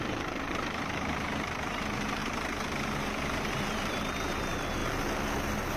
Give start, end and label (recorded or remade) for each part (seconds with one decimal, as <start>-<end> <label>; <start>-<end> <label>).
0.0-2.2 remade; 2.2-3.6 recorded; 3.6-4.8 remade; 4.8-5.8 recorded